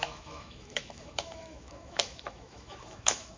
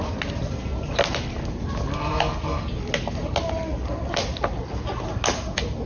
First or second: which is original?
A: second